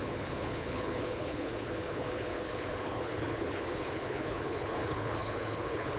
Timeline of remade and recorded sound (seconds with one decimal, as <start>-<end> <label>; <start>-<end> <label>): 0.0-6.0 remade